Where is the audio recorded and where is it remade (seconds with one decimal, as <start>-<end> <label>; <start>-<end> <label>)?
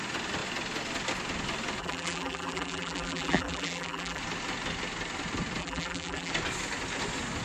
0.0-1.8 recorded; 1.8-4.2 remade; 4.2-5.6 recorded; 5.6-6.3 remade; 6.3-7.4 recorded